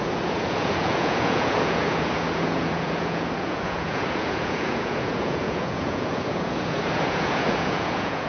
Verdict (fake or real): fake